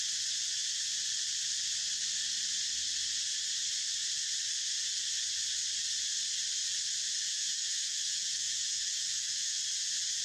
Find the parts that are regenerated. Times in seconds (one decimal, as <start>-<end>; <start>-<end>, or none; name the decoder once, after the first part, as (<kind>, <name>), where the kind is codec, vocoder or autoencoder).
7.3-9.6 (autoencoder, DAC-VAE)